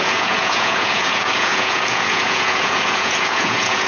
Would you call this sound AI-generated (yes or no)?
yes